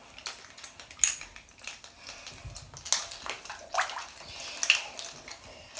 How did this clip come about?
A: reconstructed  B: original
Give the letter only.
B